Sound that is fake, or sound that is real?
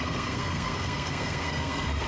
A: fake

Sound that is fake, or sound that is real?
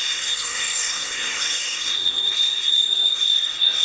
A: fake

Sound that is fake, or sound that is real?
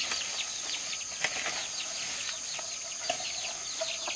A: real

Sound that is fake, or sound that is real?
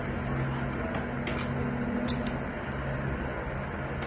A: real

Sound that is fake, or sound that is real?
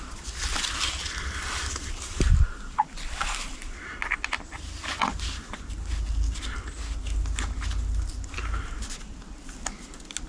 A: real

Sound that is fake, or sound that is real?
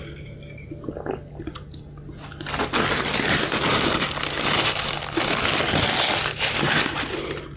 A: real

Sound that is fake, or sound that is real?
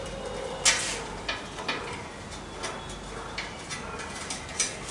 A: real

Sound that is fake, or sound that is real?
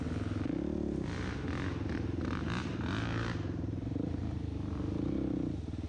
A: real